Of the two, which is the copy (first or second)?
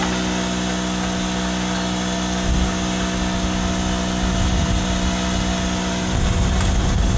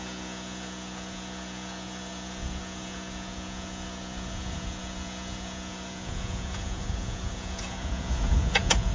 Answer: second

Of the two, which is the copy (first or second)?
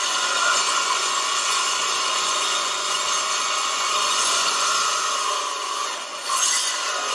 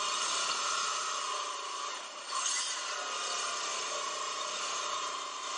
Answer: first